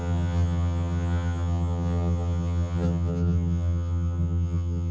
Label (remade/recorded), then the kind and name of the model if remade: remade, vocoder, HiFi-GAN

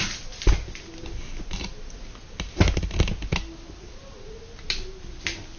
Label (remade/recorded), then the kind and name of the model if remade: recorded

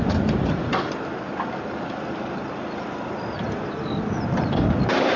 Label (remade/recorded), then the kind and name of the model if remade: recorded